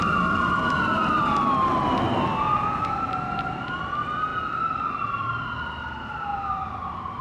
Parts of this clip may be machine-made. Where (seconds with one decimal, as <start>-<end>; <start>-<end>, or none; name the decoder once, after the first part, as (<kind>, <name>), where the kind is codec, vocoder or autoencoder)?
1.0-1.7 (vocoder, BigVGAN v2); 4.3-5.4; 6.3-6.8